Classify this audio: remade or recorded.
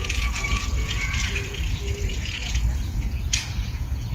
remade